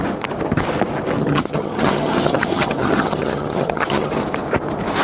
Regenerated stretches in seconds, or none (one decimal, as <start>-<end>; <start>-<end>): 1.2-4.2